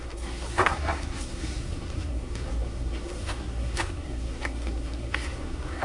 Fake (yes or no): yes